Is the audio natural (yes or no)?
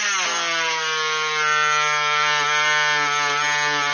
yes